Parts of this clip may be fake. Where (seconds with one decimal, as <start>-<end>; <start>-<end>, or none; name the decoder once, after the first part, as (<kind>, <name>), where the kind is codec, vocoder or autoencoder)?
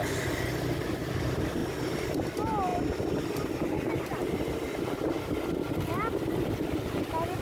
none